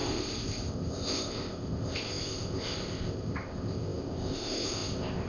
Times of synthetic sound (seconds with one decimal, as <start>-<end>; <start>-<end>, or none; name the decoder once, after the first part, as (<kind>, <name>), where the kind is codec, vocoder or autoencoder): 0.0-5.3 (codec, ZipCodec)